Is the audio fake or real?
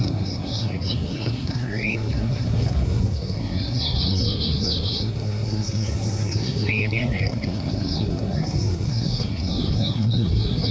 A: fake